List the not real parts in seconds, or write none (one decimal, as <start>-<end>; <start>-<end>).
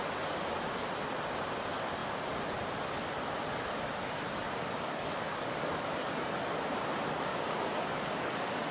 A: 4.6-6.0; 7.3-8.7